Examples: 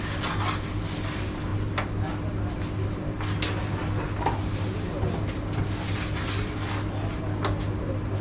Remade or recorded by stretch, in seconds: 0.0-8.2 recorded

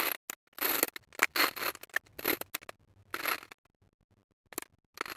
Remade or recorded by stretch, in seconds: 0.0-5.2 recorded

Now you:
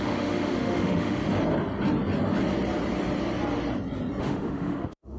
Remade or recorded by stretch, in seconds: 0.0-1.2 remade; 1.2-4.2 recorded; 4.2-5.2 remade

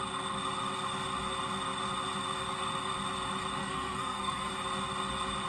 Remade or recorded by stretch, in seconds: 0.0-3.6 recorded; 3.6-4.5 remade; 4.5-5.5 recorded

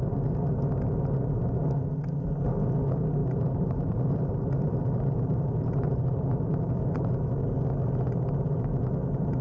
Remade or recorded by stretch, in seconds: 0.0-3.2 recorded; 3.2-7.1 remade; 7.1-9.4 recorded